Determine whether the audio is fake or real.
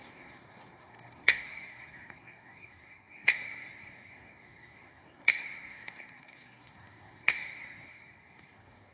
fake